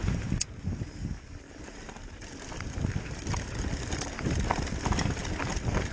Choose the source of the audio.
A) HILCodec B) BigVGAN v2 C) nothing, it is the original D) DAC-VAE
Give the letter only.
B